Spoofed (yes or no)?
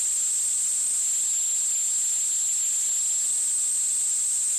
no